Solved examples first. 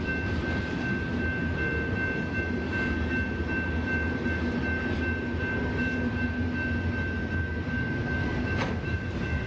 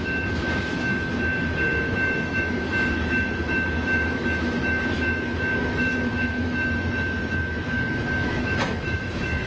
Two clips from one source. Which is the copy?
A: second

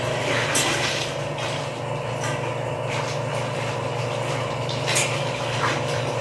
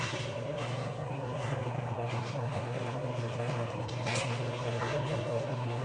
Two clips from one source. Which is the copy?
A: second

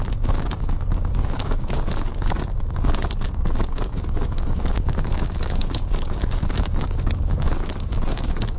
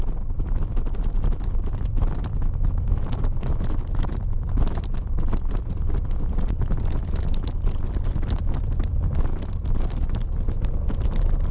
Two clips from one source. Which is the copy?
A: first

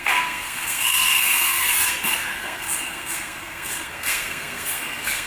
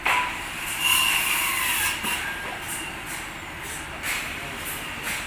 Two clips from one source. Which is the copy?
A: first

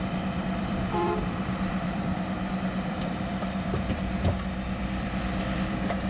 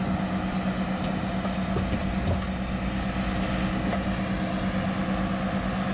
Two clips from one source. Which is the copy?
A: first